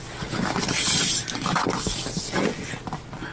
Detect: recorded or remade recorded